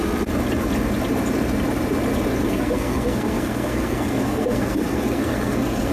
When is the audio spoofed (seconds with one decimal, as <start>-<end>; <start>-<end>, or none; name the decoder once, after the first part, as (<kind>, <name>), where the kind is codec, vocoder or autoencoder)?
2.4-5.9 (codec, SNAC)